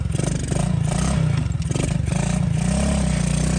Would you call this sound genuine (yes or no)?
yes